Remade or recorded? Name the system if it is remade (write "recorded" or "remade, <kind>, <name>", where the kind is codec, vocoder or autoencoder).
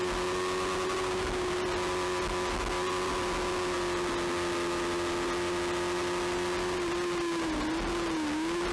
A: recorded